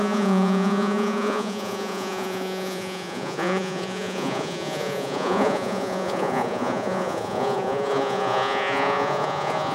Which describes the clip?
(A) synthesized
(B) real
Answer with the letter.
A